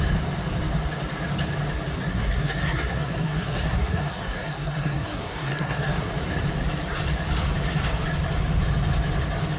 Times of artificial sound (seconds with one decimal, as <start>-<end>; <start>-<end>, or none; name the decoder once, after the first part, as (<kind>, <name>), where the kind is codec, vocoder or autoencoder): 2.1-6.1 (codec, SNAC)